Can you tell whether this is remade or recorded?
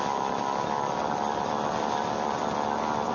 recorded